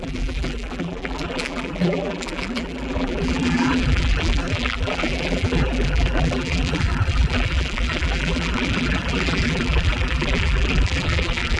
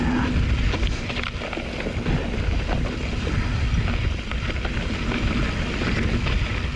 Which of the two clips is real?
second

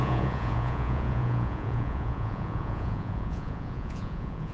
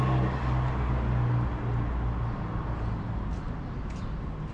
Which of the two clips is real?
second